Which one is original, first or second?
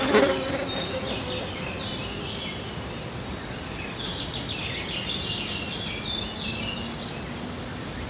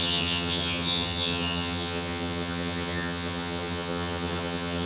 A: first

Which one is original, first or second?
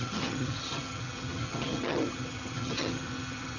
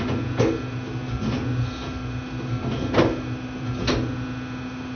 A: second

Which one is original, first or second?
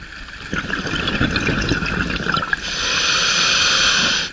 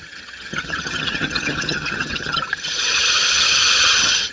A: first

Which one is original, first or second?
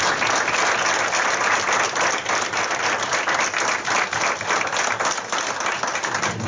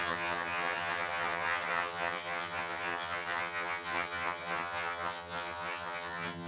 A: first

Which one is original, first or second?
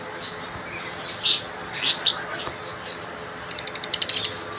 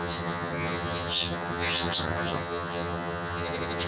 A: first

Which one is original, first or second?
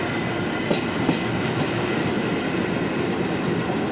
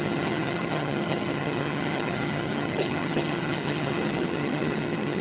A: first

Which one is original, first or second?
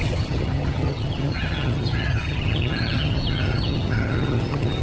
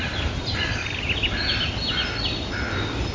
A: second